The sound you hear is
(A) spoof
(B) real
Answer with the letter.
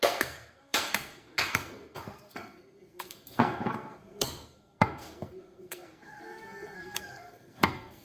A